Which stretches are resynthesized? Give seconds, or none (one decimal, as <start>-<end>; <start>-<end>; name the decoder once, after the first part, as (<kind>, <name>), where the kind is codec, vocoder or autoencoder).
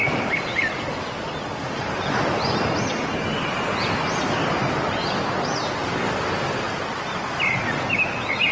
none